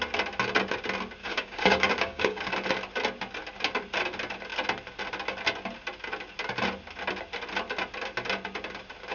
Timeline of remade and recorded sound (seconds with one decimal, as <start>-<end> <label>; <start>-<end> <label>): 0.0-1.2 recorded; 1.2-2.5 remade; 2.5-9.1 recorded